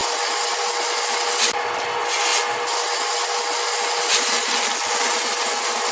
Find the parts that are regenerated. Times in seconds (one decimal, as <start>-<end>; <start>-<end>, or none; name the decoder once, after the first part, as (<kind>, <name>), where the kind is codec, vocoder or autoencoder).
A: none

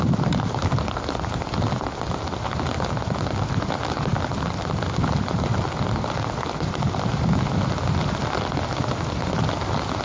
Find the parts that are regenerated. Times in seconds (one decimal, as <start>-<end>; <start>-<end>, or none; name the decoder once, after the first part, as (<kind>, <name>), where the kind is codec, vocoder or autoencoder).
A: none

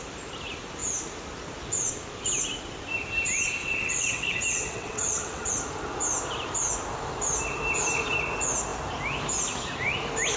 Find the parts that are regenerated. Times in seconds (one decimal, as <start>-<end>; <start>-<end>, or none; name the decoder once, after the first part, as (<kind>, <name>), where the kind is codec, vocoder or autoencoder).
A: 3.6-5.5 (vocoder, WaveNeXt)